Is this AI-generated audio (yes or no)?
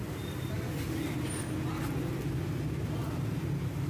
no